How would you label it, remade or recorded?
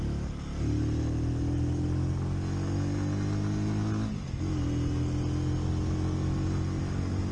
recorded